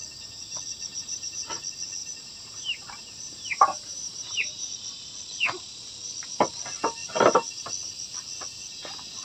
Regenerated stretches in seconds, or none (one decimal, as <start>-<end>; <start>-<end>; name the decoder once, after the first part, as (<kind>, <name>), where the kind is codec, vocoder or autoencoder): 0.9-1.5 (vocoder, BigVGAN v2); 2.0-4.7